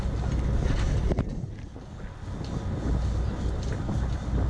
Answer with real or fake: real